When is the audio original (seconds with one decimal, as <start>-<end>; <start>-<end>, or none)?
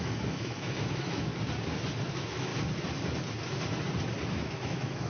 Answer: 1.3-2.0; 2.5-4.3